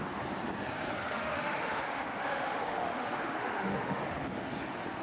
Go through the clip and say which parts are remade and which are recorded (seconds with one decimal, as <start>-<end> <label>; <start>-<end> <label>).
0.0-1.0 recorded; 1.0-4.0 remade; 4.0-5.0 recorded